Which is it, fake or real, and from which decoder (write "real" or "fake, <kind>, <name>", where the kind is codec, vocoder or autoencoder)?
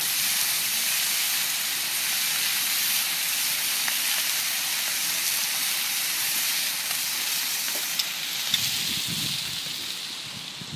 real